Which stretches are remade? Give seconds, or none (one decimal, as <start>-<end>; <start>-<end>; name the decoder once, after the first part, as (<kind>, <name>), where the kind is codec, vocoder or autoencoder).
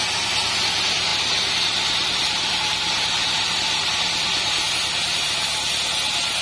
none